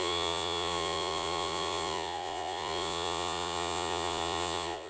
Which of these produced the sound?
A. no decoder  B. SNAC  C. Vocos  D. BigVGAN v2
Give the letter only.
C